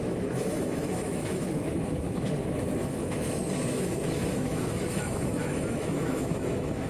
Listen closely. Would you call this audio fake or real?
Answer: fake